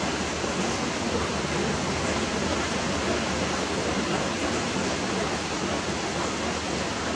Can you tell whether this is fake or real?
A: real